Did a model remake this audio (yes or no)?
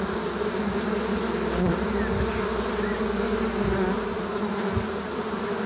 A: no